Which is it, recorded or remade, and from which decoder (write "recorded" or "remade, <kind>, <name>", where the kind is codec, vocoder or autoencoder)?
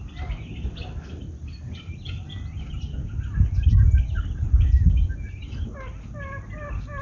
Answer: recorded